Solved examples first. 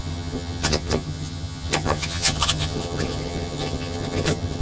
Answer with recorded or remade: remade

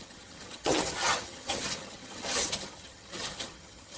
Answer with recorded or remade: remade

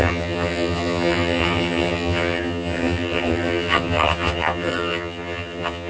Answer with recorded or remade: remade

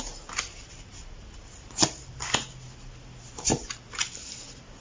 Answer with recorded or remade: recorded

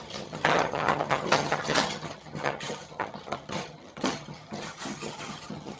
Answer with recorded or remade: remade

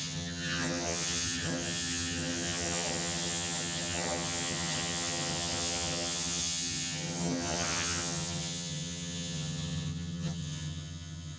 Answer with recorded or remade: remade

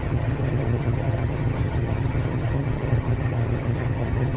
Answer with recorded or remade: remade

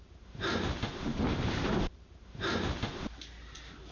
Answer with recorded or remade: recorded